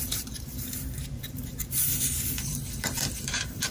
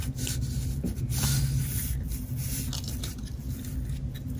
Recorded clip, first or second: second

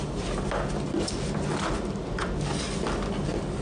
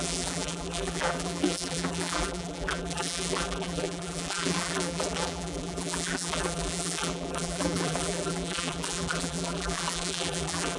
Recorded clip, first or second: first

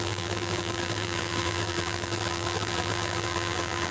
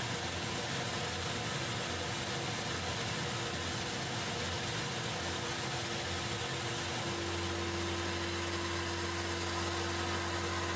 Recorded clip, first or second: second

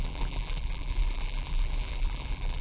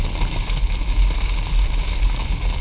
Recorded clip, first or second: second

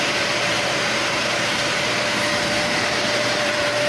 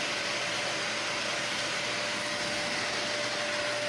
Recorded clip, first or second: second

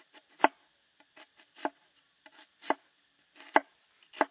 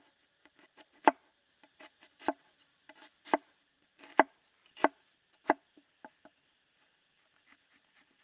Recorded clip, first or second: first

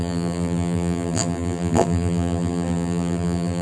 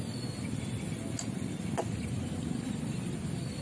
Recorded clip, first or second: second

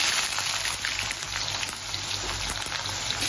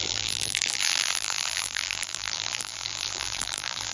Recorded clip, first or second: first